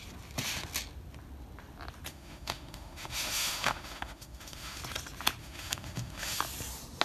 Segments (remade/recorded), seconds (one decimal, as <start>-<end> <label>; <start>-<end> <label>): 0.0-2.1 recorded; 2.1-4.8 remade; 4.8-5.4 recorded; 5.4-6.4 remade; 6.4-7.0 recorded